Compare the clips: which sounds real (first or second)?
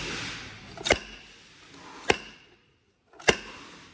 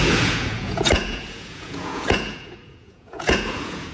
first